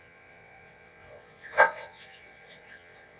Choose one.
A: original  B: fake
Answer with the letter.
B